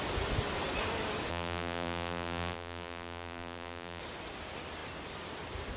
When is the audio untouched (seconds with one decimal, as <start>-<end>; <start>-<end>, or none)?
0.0-1.3; 4.0-5.8